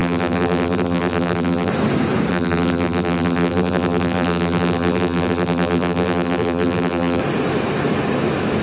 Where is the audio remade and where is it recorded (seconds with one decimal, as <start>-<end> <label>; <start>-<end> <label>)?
0.0-1.7 remade; 1.7-2.3 recorded; 2.3-7.2 remade; 7.2-8.6 recorded